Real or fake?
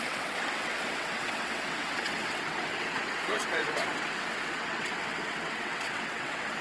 fake